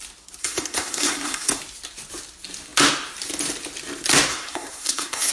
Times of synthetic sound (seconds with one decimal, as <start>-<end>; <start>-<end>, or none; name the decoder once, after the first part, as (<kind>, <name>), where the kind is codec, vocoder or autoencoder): 0.4-1.6 (codec, SNAC); 4.3-5.3